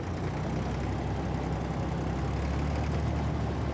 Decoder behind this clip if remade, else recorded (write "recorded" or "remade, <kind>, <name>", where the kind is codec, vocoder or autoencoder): recorded